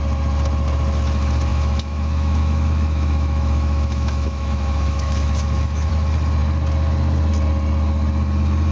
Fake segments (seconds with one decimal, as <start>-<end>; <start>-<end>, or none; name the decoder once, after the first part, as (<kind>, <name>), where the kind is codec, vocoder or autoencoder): 1.5-5.9 (autoencoder, DAC-VAE)